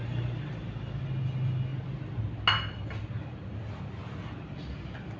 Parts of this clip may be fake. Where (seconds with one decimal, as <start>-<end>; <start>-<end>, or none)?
none